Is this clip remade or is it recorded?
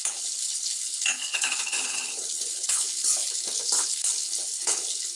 remade